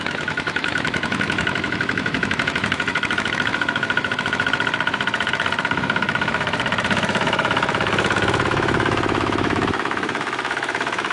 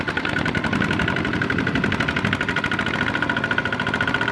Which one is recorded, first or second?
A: second